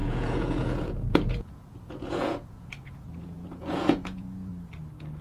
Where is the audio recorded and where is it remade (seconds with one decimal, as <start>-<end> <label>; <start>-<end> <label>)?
0.0-4.5 remade; 4.5-5.2 recorded